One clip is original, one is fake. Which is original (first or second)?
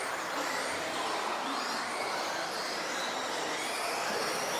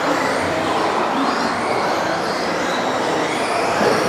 second